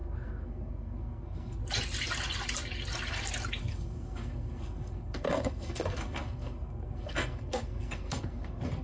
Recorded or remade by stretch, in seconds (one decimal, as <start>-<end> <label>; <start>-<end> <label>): 0.0-1.6 remade; 1.6-3.6 recorded; 3.6-8.8 remade